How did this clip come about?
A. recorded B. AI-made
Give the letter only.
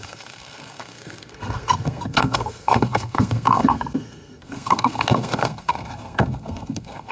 B